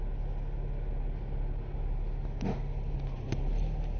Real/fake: real